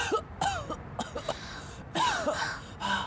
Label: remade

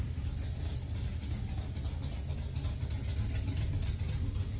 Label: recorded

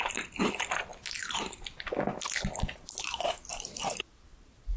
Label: recorded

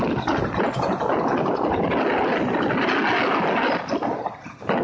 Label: recorded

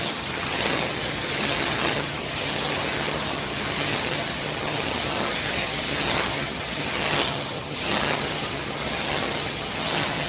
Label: remade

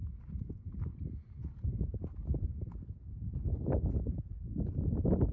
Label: remade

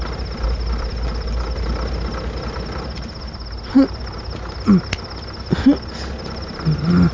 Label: recorded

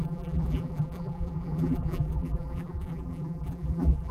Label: remade